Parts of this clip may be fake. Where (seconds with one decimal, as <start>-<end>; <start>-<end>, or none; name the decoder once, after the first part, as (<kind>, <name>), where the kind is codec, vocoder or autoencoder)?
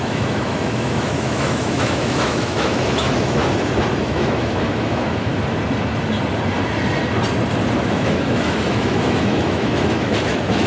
0.0-3.4 (autoencoder, DAC-VAE); 4.0-5.3; 7.8-10.7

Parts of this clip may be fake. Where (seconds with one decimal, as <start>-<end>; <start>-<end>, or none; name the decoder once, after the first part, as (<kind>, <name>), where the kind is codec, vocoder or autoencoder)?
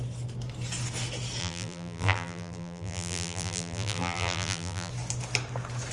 1.4-4.9 (vocoder, BigVGAN v2)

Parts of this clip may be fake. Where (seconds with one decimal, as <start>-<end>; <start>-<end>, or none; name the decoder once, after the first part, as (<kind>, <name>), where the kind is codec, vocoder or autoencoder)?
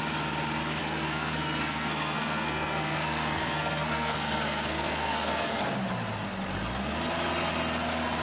0.8-5.6 (codec, SNAC)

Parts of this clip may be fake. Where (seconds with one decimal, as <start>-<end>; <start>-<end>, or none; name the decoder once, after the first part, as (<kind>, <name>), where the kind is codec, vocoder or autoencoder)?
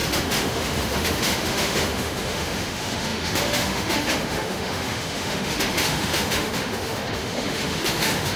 0.0-8.4 (autoencoder, DAC-VAE)